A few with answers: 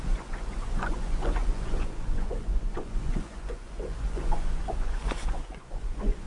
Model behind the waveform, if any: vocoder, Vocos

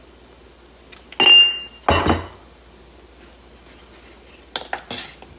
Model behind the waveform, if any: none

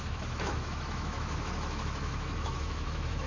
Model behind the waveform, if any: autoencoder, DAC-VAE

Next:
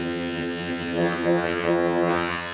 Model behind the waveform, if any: vocoder, HiFi-GAN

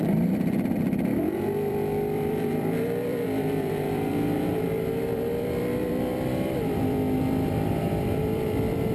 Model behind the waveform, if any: vocoder, BigVGAN v2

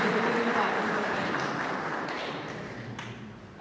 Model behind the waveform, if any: vocoder, BigVGAN v2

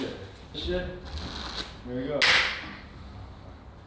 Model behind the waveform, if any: none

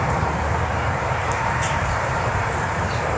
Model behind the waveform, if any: vocoder, BigVGAN v2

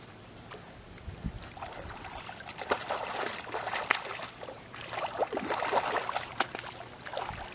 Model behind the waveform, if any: none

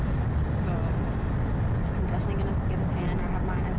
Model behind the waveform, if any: none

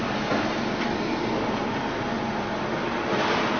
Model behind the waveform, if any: none